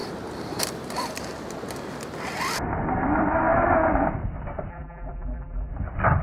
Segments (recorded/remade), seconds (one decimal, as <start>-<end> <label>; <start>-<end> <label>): 0.0-4.7 recorded; 4.7-5.7 remade; 5.7-6.2 recorded